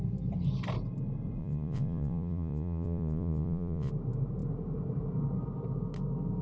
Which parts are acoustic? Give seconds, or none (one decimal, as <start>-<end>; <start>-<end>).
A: 0.0-1.4; 3.9-6.4